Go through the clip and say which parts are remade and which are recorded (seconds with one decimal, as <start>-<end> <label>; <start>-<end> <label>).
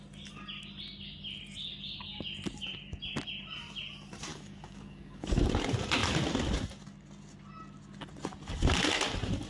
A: 0.0-4.3 recorded; 4.3-5.4 remade; 5.4-9.5 recorded